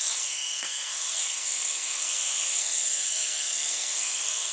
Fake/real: fake